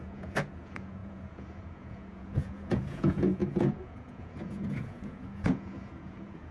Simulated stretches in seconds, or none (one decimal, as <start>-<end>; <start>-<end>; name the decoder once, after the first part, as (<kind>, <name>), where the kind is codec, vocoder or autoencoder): 0.0-6.5 (vocoder, Vocos)